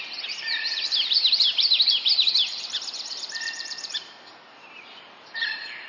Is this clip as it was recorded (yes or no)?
no